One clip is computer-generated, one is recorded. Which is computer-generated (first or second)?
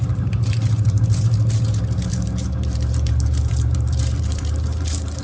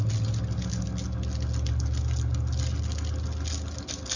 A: first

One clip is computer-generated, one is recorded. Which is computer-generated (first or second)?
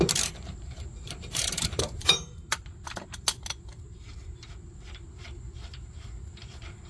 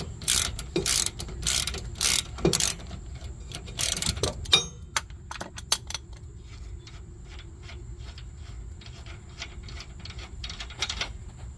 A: first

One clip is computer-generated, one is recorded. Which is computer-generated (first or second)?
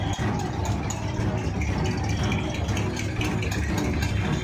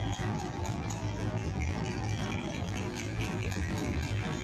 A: second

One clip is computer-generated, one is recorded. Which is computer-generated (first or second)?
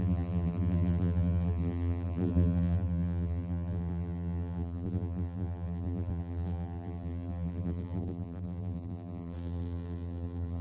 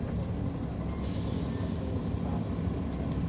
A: first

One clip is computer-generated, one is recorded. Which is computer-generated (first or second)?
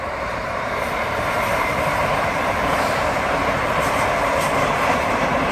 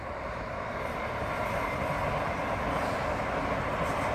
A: first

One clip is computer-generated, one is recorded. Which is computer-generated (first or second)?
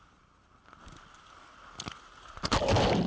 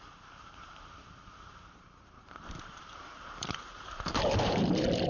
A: second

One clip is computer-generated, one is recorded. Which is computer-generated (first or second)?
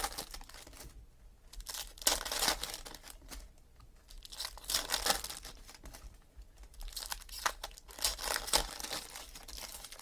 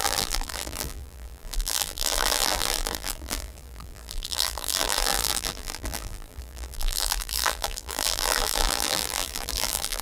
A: second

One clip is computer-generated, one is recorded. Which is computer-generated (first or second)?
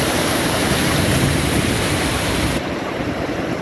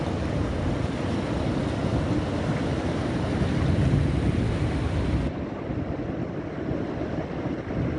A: first